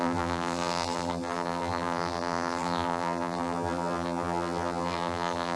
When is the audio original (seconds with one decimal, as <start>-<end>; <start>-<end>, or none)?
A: none